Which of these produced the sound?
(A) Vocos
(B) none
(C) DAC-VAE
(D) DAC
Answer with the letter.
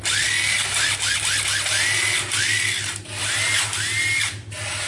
B